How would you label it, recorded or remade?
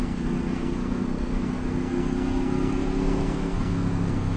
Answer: remade